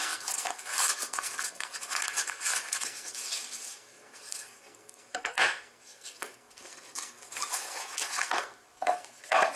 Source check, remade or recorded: remade